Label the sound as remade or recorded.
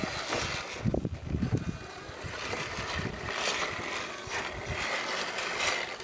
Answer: recorded